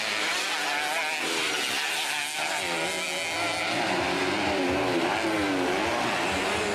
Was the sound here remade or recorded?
recorded